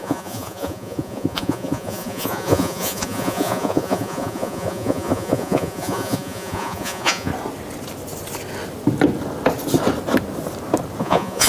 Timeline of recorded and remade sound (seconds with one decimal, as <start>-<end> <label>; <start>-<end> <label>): 0.0-7.3 remade; 7.3-11.0 recorded; 11.0-11.5 remade